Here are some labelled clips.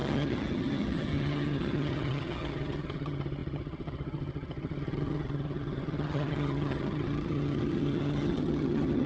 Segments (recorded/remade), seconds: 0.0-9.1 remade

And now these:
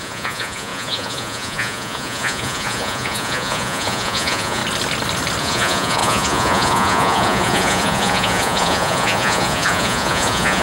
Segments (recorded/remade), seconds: 0.0-4.6 remade; 4.6-5.4 recorded; 5.4-10.6 remade

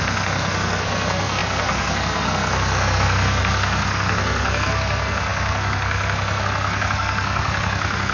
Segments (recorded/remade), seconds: 0.0-8.1 remade

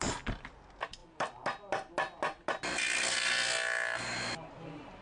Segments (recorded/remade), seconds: 0.0-5.0 recorded

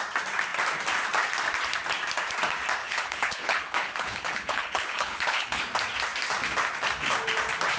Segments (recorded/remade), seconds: 0.0-2.8 recorded; 2.8-5.6 remade; 5.6-7.8 recorded